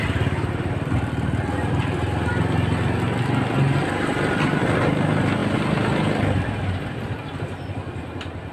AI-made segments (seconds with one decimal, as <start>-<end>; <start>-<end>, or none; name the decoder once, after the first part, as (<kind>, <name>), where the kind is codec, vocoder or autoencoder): none